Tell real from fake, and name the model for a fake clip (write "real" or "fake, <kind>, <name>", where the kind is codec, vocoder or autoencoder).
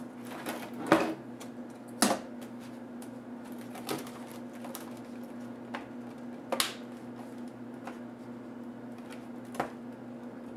real